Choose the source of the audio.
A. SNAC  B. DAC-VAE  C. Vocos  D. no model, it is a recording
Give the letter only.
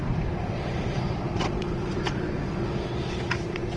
C